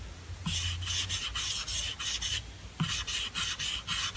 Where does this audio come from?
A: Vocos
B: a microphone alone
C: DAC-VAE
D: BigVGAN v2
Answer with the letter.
B